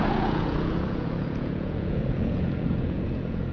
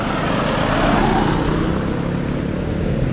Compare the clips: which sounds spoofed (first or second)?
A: first